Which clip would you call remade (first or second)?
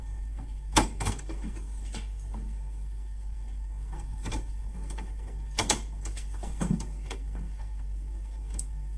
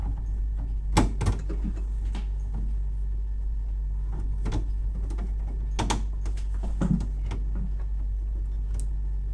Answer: first